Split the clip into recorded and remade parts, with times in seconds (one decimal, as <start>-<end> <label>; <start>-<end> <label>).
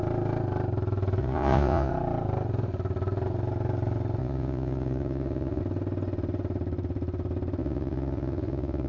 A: 0.0-1.2 recorded; 1.2-1.9 remade; 1.9-4.2 recorded; 4.2-5.6 remade; 5.6-7.6 recorded; 7.6-8.9 remade